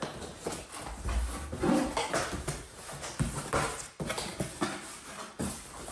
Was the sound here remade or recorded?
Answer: recorded